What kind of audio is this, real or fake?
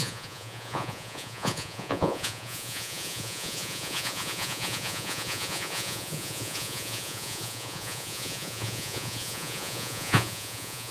fake